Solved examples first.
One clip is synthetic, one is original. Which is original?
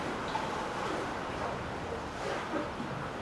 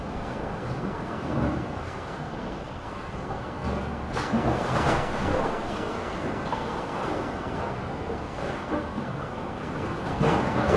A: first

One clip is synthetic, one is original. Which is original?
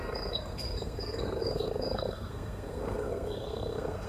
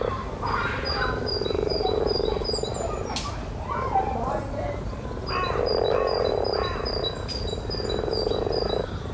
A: second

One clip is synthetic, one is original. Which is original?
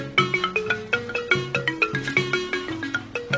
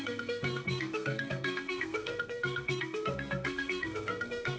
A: first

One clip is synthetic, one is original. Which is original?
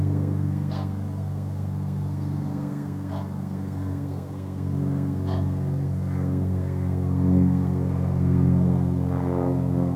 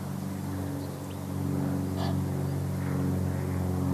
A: second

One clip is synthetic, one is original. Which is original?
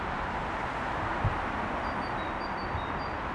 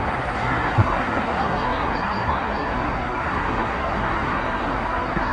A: first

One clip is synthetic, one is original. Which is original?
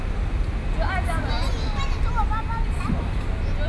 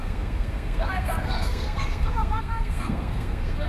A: first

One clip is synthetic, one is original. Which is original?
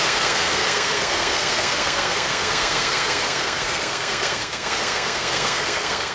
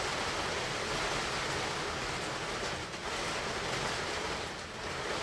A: second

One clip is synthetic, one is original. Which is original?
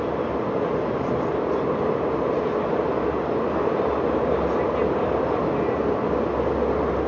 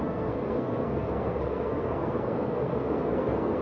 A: first